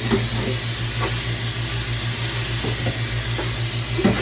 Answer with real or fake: real